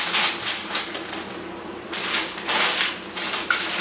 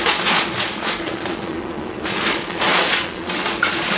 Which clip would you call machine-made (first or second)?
second